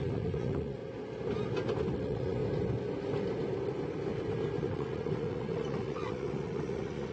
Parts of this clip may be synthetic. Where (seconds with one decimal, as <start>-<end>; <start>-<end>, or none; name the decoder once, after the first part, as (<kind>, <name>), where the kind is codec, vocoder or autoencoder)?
0.0-0.8 (vocoder, Vocos); 2.0-2.4; 4.6-7.1